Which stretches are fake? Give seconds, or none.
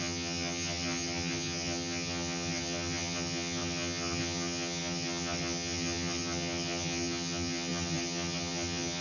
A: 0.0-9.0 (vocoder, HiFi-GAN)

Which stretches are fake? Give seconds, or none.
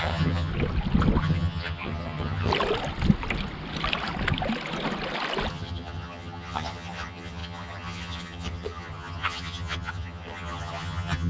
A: 0.0-0.5 (vocoder, HiFi-GAN); 1.2-2.5; 5.5-11.3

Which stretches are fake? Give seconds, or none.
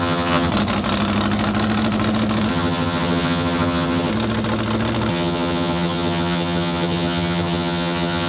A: 0.0-0.5 (vocoder, HiFi-GAN); 2.5-4.1; 5.1-8.3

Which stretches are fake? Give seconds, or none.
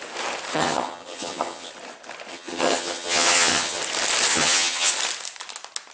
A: 0.5-1.7 (vocoder, HiFi-GAN); 2.3-3.8; 4.3-4.9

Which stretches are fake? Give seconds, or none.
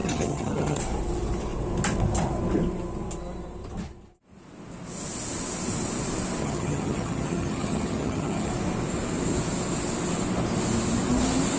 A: 0.0-0.8 (vocoder, HiFi-GAN); 6.4-8.5